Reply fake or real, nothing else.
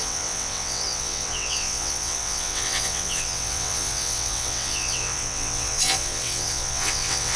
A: fake